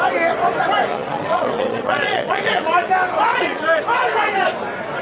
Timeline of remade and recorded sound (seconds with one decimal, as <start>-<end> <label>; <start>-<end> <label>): 0.0-0.9 recorded; 0.9-2.9 remade; 2.9-3.3 recorded; 3.3-3.8 remade; 3.8-5.0 recorded